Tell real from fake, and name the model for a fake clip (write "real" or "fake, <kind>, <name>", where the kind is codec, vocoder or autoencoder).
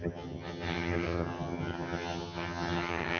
fake, vocoder, HiFi-GAN